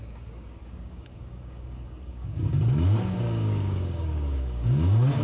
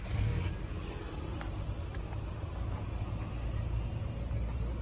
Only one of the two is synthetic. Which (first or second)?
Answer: first